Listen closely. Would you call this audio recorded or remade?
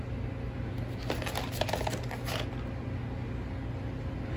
recorded